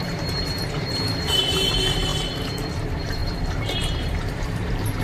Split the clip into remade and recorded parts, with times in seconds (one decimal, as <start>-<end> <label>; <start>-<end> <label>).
0.0-2.1 remade; 2.1-2.8 recorded; 2.8-5.0 remade